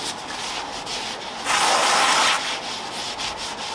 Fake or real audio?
real